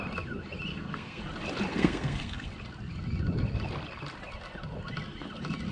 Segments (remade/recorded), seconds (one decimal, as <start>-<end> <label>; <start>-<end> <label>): 0.0-0.7 recorded; 0.7-1.2 remade; 1.2-1.7 recorded; 1.7-2.5 remade; 2.5-5.7 recorded